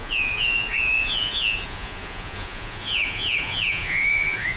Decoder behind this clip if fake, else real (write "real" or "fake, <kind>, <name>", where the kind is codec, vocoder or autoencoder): fake, vocoder, Vocos